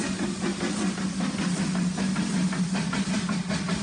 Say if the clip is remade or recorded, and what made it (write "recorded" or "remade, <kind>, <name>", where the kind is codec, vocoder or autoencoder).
recorded